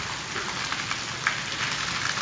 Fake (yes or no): no